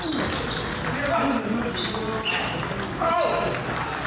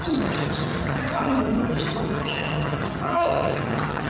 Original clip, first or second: first